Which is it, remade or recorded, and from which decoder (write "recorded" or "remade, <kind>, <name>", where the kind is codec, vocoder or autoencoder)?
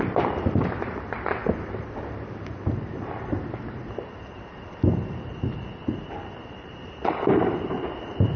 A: remade, vocoder, BigVGAN v2